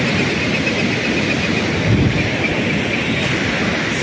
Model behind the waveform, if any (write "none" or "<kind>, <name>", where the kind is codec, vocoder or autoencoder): none